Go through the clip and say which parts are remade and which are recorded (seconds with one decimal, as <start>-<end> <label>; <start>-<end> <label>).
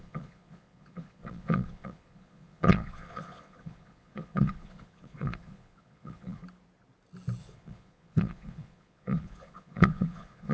0.0-6.4 remade; 6.4-7.4 recorded; 7.4-10.5 remade